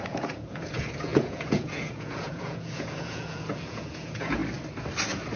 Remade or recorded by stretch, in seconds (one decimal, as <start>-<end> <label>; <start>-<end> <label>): 0.0-4.4 remade; 4.4-5.4 recorded